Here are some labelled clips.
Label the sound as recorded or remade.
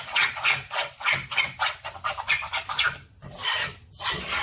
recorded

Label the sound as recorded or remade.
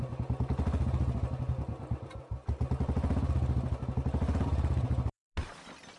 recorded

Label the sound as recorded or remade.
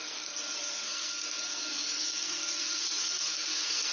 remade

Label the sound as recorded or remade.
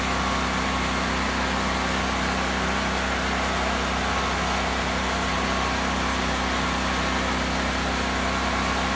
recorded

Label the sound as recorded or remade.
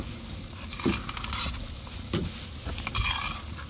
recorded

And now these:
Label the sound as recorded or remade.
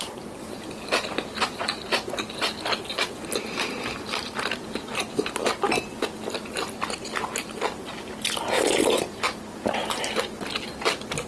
recorded